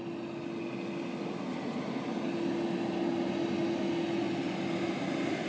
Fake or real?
real